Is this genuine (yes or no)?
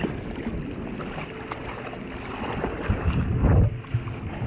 yes